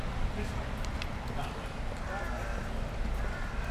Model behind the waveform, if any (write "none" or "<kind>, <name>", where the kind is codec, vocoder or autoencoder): none